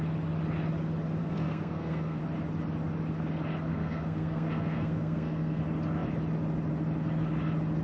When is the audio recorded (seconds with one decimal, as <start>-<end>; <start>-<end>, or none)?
0.0-1.2; 2.2-3.7; 5.6-7.8